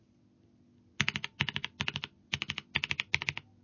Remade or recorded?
recorded